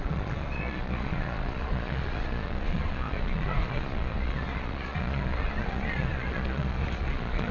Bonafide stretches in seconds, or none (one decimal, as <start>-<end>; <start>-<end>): none